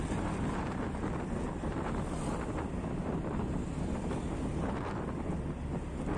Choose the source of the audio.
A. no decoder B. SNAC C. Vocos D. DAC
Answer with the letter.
A